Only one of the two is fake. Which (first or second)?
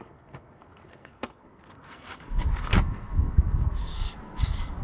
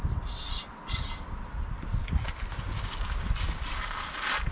first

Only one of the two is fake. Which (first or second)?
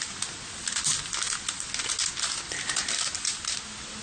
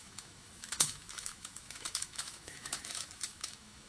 second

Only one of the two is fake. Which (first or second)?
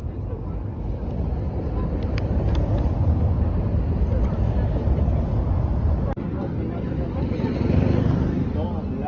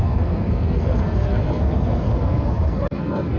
second